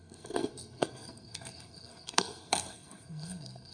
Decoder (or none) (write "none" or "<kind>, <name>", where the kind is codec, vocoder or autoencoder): codec, SNAC